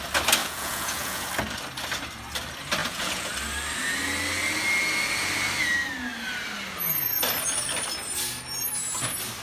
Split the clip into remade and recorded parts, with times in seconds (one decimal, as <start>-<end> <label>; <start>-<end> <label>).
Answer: 0.0-0.4 recorded; 0.4-1.3 remade; 1.3-2.8 recorded; 2.8-3.3 remade; 3.3-9.4 recorded